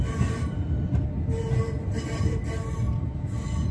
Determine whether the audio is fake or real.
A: real